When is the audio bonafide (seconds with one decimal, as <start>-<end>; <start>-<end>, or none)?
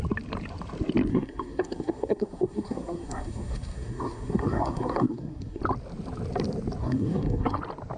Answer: 0.0-1.1; 5.6-6.8; 7.6-8.0